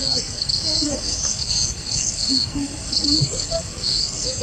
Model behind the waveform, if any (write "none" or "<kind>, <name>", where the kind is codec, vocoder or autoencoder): codec, SNAC